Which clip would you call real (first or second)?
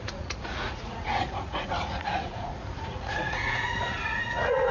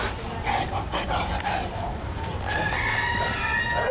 second